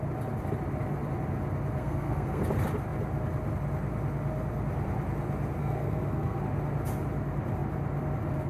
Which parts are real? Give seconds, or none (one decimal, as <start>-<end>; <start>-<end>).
0.0-1.8; 2.4-5.6; 6.4-8.5